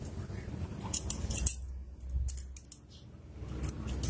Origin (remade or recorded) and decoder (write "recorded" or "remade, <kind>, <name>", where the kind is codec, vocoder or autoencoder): recorded